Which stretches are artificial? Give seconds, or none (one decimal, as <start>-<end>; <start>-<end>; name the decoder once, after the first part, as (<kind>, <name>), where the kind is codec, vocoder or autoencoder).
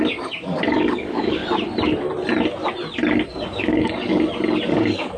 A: 0.0-1.4 (codec, DAC); 3.3-4.1; 4.7-5.2